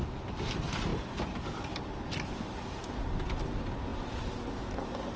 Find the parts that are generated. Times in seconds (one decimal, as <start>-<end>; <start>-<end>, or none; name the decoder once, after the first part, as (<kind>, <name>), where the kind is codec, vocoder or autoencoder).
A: none